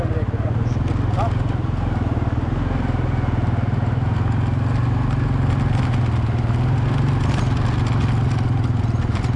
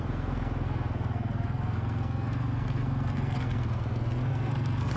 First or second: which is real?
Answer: first